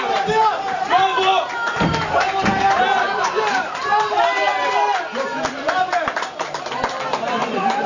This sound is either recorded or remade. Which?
remade